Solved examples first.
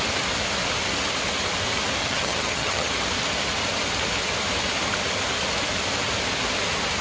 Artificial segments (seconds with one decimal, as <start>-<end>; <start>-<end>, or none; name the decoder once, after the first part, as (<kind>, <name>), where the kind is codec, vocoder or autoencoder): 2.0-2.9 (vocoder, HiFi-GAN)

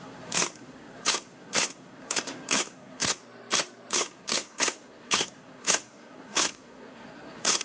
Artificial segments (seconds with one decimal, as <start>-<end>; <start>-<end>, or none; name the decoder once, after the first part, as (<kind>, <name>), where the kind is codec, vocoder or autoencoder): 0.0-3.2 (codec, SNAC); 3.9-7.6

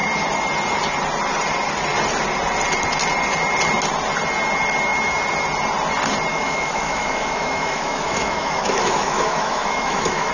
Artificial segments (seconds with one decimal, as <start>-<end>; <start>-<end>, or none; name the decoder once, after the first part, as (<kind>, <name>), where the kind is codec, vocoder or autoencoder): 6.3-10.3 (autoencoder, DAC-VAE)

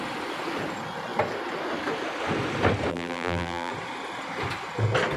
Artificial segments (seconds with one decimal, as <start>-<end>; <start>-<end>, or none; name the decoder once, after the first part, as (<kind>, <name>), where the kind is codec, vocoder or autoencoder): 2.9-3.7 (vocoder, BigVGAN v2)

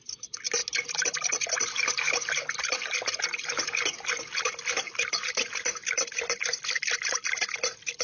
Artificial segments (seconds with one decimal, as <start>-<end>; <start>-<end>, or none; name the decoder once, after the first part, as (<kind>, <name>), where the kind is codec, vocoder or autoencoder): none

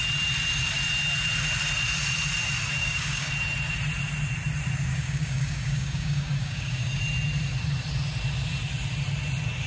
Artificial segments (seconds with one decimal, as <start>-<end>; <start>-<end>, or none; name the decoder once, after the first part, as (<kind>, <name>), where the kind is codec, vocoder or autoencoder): 2.8-3.3 (codec, DAC); 4.9-7.0